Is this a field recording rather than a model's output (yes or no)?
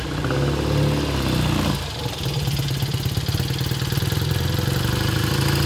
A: yes